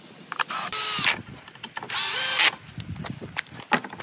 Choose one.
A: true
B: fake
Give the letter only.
A